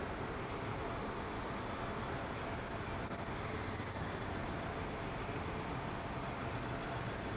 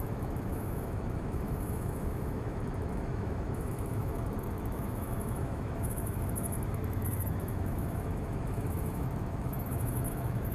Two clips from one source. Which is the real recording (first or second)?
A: first